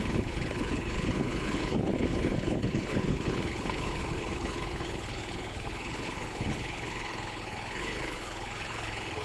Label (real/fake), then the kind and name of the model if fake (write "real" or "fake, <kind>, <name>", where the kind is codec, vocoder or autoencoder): fake, codec, HILCodec